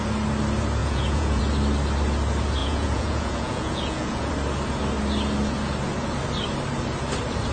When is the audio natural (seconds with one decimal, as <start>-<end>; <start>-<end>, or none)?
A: 0.0-0.8; 1.4-2.6; 4.3-7.5

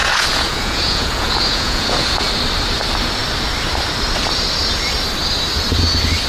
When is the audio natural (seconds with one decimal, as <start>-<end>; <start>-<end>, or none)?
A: 2.3-6.3

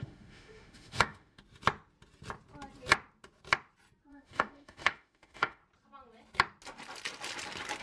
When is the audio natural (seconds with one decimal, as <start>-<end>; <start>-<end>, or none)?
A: 1.4-4.1; 5.6-7.8

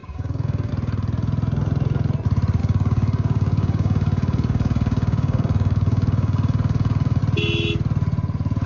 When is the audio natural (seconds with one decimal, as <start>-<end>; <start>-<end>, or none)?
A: 0.7-2.6; 7.2-8.7

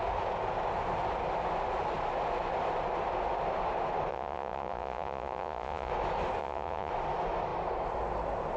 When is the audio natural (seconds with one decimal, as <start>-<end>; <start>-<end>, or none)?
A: 0.0-4.1; 5.9-6.4; 6.9-8.6

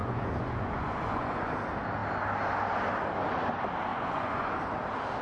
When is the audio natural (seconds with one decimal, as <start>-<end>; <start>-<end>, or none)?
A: 1.5-3.9; 4.6-5.2

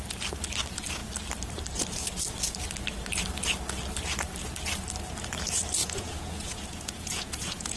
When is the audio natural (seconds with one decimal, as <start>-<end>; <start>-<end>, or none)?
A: 0.0-5.8